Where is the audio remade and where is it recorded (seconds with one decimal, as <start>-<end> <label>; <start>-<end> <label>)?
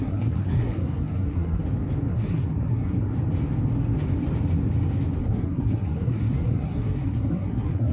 0.0-1.6 remade; 1.6-2.1 recorded; 2.1-3.1 remade; 3.1-5.2 recorded; 5.2-7.9 remade